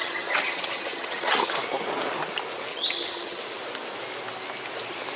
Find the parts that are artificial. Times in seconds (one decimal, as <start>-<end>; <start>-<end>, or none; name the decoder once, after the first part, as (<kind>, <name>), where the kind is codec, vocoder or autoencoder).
0.0-1.5 (vocoder, HiFi-GAN); 2.7-3.4